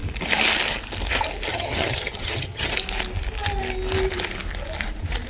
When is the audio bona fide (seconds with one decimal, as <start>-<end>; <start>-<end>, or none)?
0.0-1.5; 2.7-5.3